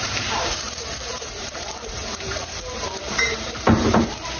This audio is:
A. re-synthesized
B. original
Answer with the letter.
A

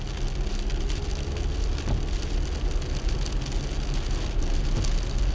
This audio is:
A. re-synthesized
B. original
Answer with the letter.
B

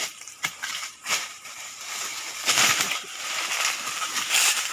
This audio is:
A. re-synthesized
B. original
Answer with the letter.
A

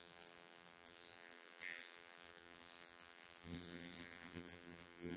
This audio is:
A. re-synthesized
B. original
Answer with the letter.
A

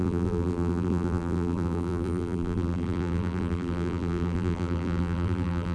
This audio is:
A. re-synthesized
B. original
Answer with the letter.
A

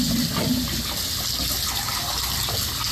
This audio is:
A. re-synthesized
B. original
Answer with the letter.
B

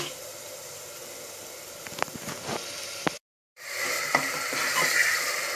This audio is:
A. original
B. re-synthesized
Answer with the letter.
B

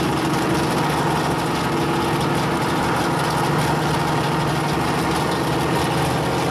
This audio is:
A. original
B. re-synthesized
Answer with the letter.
A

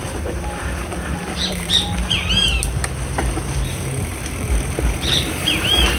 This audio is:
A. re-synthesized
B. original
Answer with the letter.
A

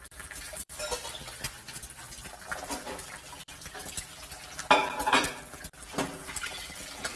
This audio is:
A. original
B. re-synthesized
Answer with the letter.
B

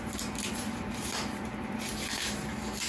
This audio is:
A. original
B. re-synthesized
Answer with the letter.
B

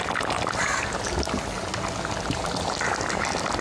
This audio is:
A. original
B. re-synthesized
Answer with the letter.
A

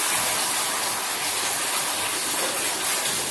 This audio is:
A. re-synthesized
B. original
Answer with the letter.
B